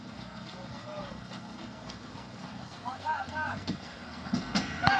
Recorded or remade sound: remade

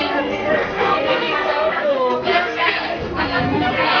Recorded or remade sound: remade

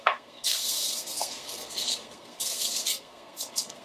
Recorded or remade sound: remade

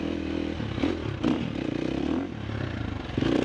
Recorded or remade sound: recorded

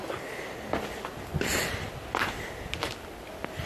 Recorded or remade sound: recorded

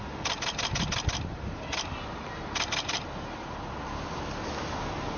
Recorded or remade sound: recorded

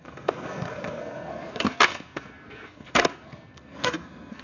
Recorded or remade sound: remade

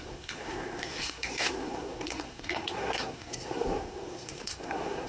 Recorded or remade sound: remade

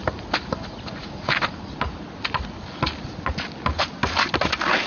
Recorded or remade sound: recorded